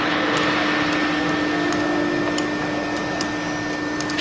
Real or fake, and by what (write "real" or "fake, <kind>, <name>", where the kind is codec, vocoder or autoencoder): real